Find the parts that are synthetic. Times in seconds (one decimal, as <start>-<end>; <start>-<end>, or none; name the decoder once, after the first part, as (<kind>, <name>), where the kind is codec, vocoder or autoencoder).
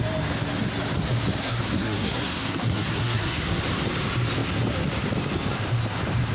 1.4-3.6 (codec, SNAC)